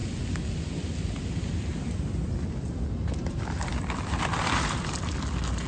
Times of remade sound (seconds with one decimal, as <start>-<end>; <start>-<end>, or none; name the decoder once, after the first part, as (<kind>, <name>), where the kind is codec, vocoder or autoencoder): none